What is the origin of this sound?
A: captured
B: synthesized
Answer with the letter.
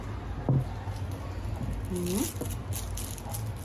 A